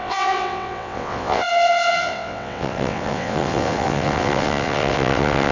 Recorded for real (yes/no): no